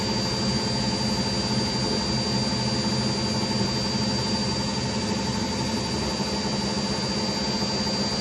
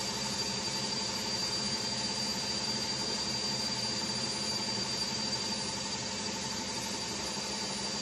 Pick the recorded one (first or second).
first